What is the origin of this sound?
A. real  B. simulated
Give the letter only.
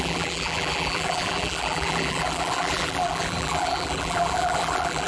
B